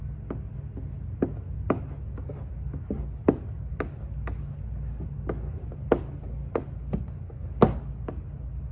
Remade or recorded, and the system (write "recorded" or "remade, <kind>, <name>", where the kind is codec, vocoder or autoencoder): recorded